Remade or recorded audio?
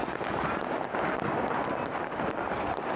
recorded